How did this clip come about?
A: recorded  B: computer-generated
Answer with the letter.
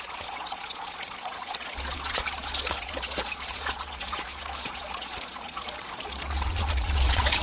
B